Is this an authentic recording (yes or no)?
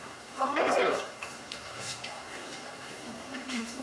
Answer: no